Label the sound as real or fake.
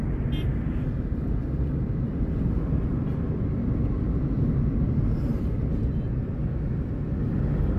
real